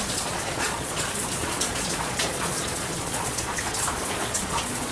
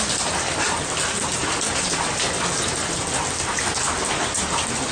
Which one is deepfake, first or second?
first